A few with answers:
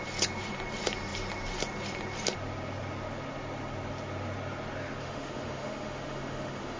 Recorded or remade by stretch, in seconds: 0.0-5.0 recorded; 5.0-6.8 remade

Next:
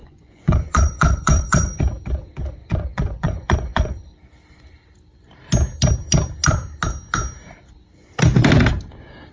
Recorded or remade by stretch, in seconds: 0.0-1.8 remade; 1.8-2.6 recorded; 2.6-4.1 remade; 4.1-9.3 recorded

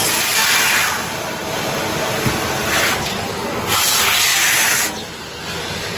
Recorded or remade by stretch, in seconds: 0.0-0.4 remade; 0.4-1.1 recorded; 1.1-4.3 remade; 4.3-5.5 recorded; 5.5-6.0 remade

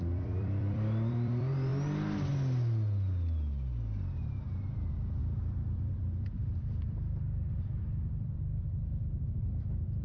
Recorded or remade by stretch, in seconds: 0.0-1.7 remade; 1.7-4.0 recorded; 4.0-10.0 remade

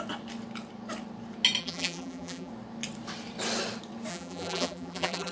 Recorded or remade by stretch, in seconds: 0.0-1.6 recorded; 1.6-2.5 remade; 2.5-4.1 recorded; 4.1-5.3 remade